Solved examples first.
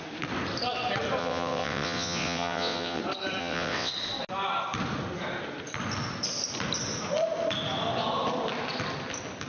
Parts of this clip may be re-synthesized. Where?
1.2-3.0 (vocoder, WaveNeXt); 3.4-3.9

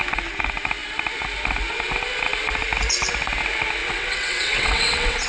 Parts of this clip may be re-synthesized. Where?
3.8-5.3 (vocoder, WaveNeXt)

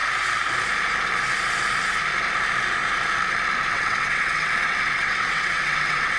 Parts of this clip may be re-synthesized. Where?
3.7-6.2 (vocoder, WaveNeXt)

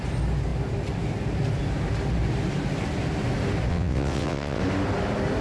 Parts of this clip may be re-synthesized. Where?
3.7-4.6 (vocoder, WaveNeXt)

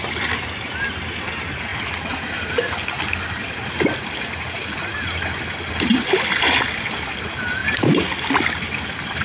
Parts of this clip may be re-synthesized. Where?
none